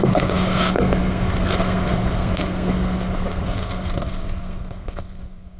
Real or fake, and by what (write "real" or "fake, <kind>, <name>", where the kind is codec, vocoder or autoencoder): fake, codec, SNAC